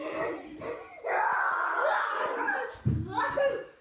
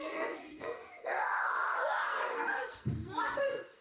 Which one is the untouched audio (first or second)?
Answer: first